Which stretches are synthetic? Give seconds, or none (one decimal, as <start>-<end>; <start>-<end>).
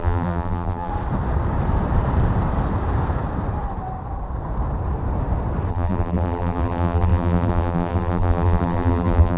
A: 0.0-0.9; 5.7-9.4